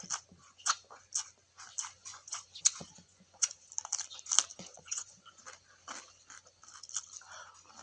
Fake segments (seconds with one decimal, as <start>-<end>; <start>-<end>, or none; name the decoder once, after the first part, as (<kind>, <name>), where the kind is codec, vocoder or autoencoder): 0.4-1.0 (vocoder, Vocos); 2.0-3.7; 4.5-5.4